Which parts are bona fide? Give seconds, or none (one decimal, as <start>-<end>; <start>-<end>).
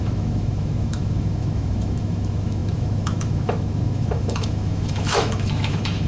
none